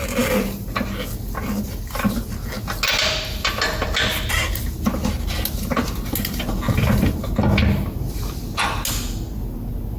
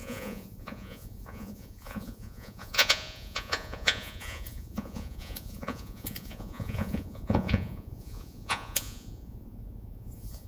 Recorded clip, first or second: first